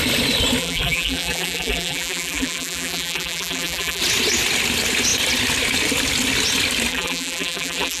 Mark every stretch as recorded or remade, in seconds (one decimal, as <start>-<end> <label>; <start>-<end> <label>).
0.0-0.6 recorded; 0.6-4.0 remade; 4.0-6.9 recorded; 6.9-8.0 remade